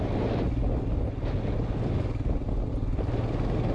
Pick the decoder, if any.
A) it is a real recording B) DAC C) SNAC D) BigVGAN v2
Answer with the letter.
A